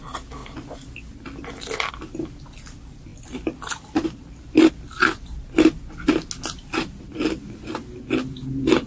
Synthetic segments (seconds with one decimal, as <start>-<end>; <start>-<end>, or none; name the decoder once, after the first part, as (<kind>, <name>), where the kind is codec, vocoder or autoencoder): 3.1-4.7 (vocoder, BigVGAN v2)